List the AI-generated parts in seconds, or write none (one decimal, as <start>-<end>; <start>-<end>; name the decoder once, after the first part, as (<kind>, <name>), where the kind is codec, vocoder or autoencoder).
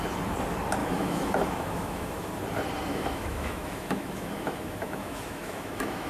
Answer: 0.8-2.3 (autoencoder, DAC-VAE); 2.9-6.1